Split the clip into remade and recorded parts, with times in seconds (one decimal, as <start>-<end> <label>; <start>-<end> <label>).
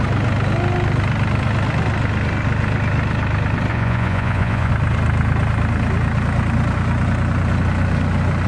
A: 0.0-3.7 recorded; 3.7-4.7 remade; 4.7-8.5 recorded